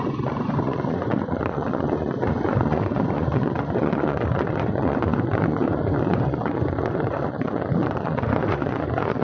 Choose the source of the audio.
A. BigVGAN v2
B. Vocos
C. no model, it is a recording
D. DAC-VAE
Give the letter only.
B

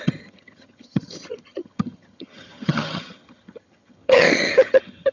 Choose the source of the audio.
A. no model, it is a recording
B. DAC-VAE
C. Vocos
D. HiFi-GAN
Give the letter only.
D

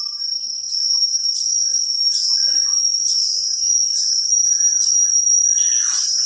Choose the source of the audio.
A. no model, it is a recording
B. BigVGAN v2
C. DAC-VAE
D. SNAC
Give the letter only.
A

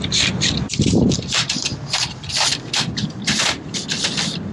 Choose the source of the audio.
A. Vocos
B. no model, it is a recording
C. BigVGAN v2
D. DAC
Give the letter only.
B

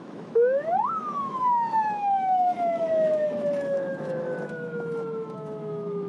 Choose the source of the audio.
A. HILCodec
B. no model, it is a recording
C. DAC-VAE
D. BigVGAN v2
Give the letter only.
C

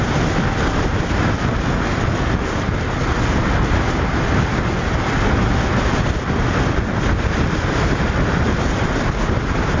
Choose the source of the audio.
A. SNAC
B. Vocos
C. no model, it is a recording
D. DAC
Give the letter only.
C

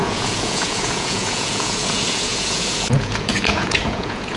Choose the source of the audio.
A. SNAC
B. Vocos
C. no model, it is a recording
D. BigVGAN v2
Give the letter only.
B